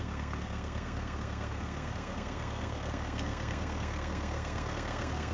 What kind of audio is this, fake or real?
fake